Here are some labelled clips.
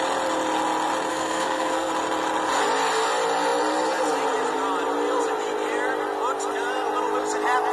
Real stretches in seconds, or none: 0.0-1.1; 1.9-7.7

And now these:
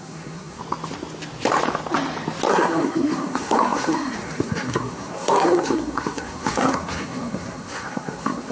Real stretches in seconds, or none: 0.6-2.5